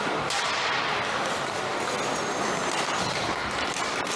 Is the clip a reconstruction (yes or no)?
no